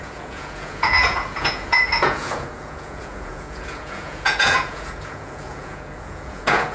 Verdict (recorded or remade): remade